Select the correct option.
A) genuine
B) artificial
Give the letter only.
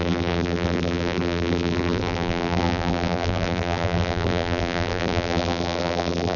B